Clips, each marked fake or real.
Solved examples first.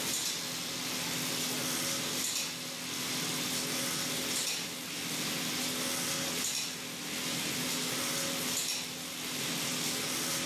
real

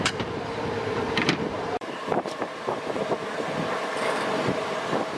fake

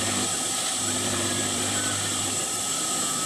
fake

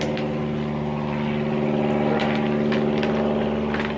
real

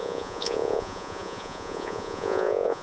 fake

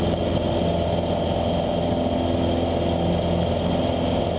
real